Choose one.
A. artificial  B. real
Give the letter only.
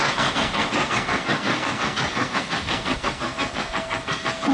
A